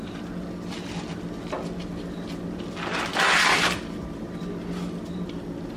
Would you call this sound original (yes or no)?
yes